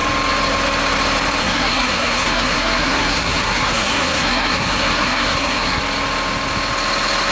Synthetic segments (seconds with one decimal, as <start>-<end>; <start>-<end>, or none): 1.4-5.8